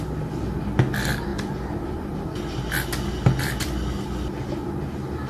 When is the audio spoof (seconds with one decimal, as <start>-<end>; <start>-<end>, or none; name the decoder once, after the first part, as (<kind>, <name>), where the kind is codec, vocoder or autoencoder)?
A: none